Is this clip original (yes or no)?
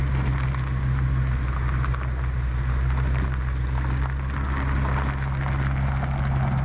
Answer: yes